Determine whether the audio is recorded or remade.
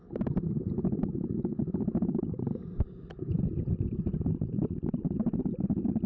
recorded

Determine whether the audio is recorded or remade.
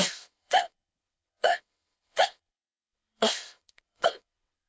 remade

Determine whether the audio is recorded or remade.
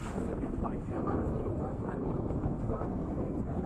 remade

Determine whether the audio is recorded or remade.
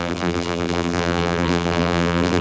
remade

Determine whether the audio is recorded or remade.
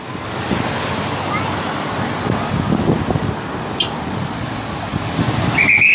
recorded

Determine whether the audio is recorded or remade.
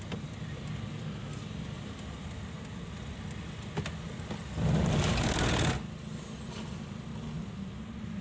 recorded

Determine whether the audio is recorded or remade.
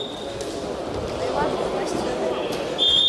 recorded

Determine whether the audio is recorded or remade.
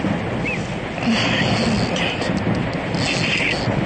recorded